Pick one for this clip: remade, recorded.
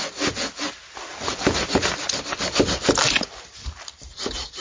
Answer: recorded